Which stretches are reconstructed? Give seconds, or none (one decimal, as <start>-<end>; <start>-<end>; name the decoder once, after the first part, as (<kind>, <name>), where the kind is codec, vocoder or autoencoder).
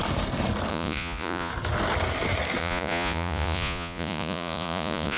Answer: 0.7-1.5 (vocoder, Vocos); 2.6-5.2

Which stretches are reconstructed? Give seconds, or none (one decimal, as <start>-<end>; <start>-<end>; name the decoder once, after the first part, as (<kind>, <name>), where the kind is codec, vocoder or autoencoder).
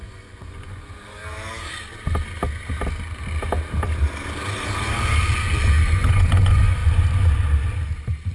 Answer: 0.0-1.2 (vocoder, Vocos); 5.8-6.8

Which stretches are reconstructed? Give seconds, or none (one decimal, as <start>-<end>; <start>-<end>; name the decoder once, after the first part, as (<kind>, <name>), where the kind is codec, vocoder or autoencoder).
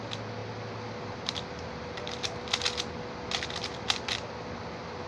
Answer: none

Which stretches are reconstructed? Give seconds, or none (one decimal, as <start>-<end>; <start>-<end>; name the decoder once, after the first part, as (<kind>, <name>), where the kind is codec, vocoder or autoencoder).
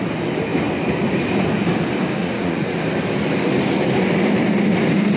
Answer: 2.2-2.8 (vocoder, Vocos)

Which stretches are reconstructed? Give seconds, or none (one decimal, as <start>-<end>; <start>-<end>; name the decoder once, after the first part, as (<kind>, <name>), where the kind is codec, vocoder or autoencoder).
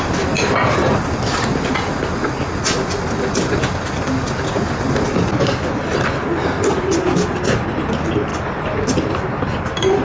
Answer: none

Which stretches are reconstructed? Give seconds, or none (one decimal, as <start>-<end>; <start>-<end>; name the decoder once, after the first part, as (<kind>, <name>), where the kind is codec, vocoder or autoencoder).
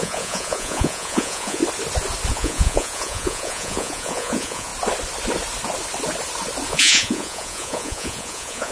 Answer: 0.0-1.6 (vocoder, Vocos); 2.3-4.7; 6.7-8.7